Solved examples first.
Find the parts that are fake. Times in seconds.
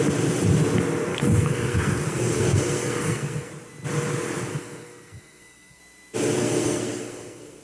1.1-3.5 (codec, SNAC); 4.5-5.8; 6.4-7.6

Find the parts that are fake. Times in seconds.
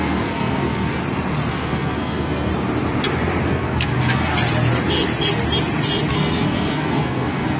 0.0-1.0 (codec, SNAC); 1.5-2.5; 3.5-4.3; 6.1-7.6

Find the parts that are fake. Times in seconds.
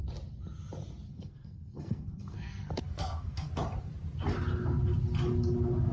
1.1-3.5 (codec, SNAC)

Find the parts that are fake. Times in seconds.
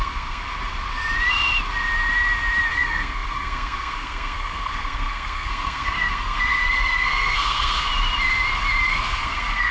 0.0-0.4 (codec, SNAC); 2.7-7.9; 8.8-9.7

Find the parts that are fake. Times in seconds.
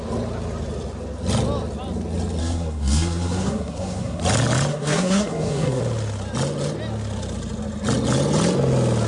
2.4-4.2 (codec, SNAC); 4.7-5.8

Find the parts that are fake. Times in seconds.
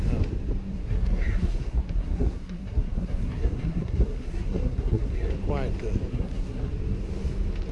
0.7-5.3 (codec, SNAC); 6.1-6.7